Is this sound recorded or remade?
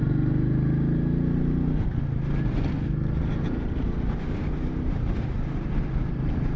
recorded